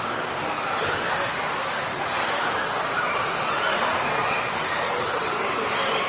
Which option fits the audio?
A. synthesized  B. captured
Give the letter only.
B